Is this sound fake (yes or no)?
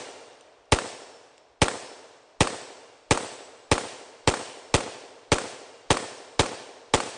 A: no